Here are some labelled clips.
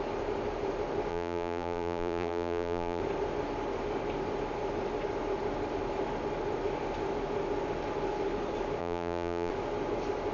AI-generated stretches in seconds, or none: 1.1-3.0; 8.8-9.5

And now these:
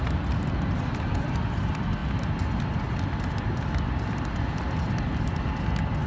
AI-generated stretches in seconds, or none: none

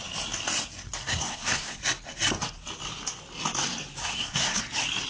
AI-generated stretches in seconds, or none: 1.0-1.8; 4.0-4.6

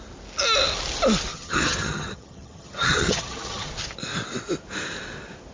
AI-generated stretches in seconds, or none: 1.3-3.7

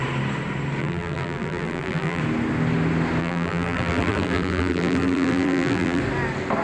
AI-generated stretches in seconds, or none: 0.8-2.2; 3.2-6.0

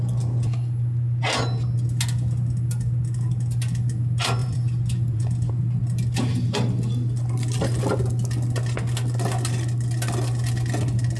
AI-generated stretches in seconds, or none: 4.4-5.5

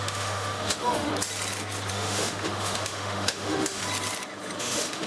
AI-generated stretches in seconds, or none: 0.0-1.1; 1.9-3.8; 4.6-5.1

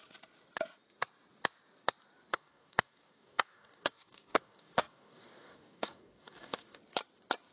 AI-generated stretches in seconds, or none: 2.3-6.8